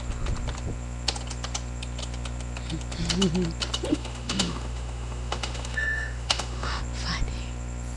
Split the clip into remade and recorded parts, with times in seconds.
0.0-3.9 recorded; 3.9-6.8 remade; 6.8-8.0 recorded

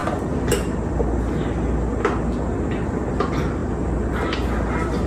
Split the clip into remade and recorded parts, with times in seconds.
0.0-5.1 recorded

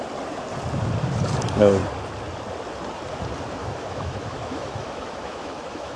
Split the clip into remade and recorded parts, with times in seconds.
0.0-3.6 recorded; 3.6-6.0 remade

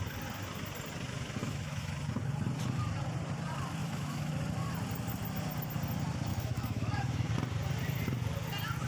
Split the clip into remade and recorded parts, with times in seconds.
0.0-1.4 recorded; 1.4-1.9 remade; 1.9-3.8 recorded; 3.8-4.3 remade; 4.3-6.3 recorded; 6.3-7.3 remade; 7.3-8.9 recorded

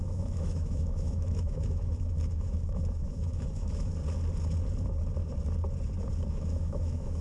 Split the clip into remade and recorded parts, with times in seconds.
0.0-3.9 remade; 3.9-6.3 recorded; 6.3-7.2 remade

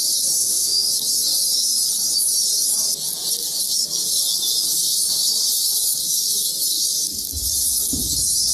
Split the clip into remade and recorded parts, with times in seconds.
0.0-0.4 recorded; 0.4-0.9 remade; 0.9-8.5 recorded

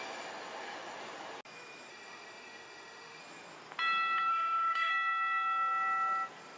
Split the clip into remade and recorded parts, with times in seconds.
0.0-1.9 recorded; 1.9-3.2 remade; 3.2-4.3 recorded; 4.3-4.9 remade; 4.9-6.6 recorded

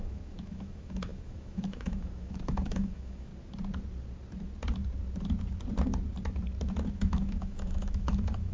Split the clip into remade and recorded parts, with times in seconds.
0.0-3.3 remade; 3.3-6.9 recorded; 6.9-8.5 remade